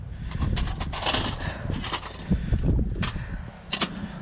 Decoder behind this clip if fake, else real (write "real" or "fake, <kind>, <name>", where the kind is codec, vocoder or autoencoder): real